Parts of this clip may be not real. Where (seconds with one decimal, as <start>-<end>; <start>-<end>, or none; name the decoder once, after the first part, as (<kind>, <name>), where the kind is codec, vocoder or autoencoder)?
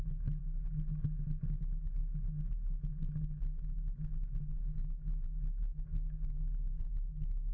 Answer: none